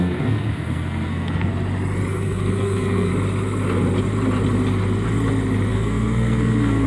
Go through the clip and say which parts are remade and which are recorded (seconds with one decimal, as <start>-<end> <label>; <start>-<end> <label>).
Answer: 0.0-1.5 remade; 1.5-2.1 recorded; 2.1-3.1 remade; 3.1-5.7 recorded; 5.7-6.9 remade